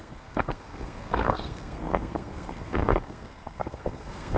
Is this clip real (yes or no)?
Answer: no